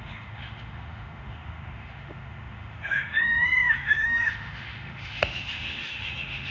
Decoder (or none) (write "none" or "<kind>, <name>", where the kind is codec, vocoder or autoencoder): autoencoder, DAC-VAE